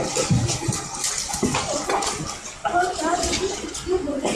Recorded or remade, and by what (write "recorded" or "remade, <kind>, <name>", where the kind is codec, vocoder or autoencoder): recorded